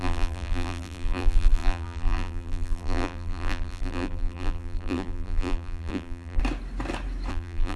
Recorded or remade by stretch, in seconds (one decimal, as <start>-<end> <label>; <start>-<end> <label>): 0.0-6.4 remade; 6.4-7.3 recorded; 7.3-7.8 remade